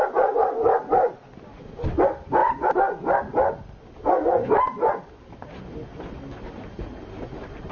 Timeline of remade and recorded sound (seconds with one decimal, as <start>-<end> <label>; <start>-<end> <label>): 0.0-7.7 recorded